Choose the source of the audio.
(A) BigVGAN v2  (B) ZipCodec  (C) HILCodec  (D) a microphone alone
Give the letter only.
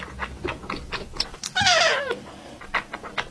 D